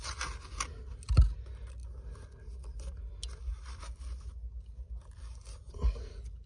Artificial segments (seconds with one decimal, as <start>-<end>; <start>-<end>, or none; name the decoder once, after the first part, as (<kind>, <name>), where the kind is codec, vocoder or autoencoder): none